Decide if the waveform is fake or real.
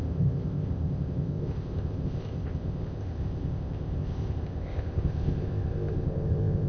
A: fake